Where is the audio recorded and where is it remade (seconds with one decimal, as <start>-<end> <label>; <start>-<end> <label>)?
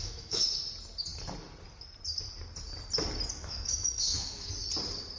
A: 0.0-0.6 remade; 0.6-3.4 recorded; 3.4-4.5 remade; 4.5-5.2 recorded